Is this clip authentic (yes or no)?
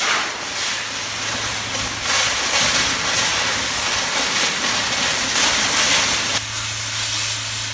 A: yes